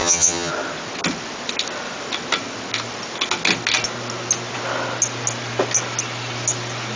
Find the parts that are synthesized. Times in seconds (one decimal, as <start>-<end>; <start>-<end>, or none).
0.0-0.5